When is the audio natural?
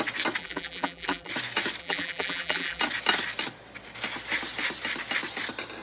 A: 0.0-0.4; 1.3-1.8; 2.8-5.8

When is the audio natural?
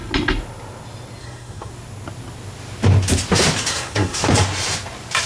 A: 0.0-1.2; 1.7-3.7; 4.2-5.3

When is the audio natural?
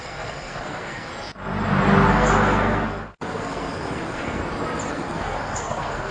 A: 1.1-2.1; 4.4-4.9